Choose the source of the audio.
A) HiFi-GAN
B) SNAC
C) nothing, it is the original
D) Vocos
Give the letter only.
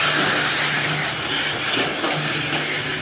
C